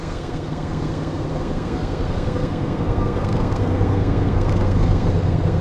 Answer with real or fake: fake